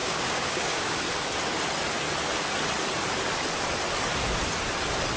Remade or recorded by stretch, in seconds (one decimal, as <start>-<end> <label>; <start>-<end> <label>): 0.0-1.0 remade; 1.0-5.2 recorded